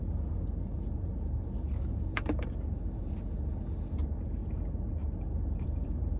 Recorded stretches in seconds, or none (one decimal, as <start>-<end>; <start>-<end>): 0.0-2.1; 3.1-4.4

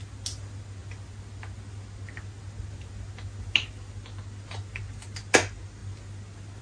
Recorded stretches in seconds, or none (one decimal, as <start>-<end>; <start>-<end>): 0.0-6.6

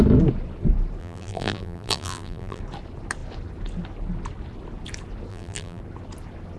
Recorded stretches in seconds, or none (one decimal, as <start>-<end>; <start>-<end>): 0.0-1.0; 2.6-5.3; 5.8-6.6